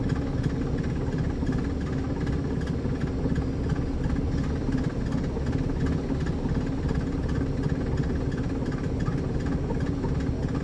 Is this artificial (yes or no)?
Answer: no